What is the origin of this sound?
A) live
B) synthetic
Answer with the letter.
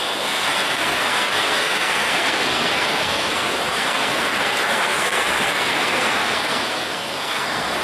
B